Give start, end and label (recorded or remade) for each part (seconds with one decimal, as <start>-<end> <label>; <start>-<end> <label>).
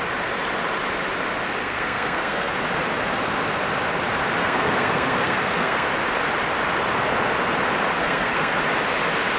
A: 0.0-1.6 recorded; 1.6-2.5 remade; 2.5-4.4 recorded; 4.4-5.9 remade; 5.9-8.0 recorded; 8.0-8.6 remade; 8.6-9.4 recorded